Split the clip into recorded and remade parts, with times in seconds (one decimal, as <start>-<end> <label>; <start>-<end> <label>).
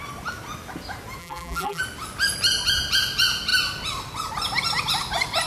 0.0-1.2 recorded; 1.2-1.8 remade; 1.8-5.5 recorded